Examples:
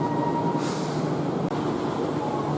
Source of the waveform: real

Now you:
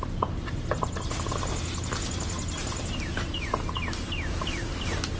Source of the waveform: real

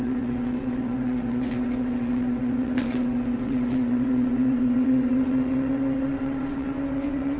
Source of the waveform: fake